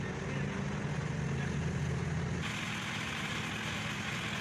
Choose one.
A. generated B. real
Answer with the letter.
B